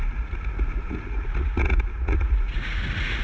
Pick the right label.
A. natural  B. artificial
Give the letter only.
B